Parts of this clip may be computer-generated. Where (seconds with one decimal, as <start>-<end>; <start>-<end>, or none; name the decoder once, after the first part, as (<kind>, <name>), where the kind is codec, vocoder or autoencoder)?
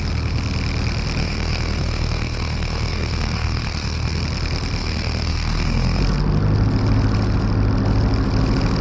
1.2-4.2 (codec, SNAC); 4.8-6.0